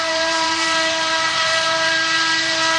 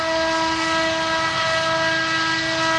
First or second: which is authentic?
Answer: second